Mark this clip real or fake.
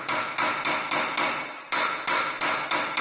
real